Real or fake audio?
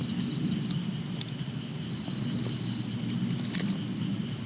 real